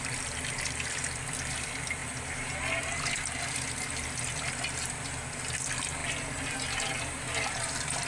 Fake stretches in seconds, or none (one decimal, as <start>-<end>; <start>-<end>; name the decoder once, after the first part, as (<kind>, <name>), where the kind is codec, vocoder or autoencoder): none